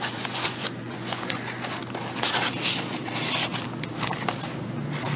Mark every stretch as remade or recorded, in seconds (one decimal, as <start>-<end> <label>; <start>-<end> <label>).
0.0-1.8 remade; 1.8-5.2 recorded